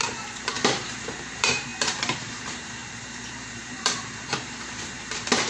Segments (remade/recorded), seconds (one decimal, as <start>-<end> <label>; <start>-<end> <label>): 0.0-5.5 remade